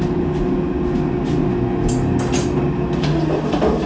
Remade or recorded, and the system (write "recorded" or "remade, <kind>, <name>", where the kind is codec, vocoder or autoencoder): recorded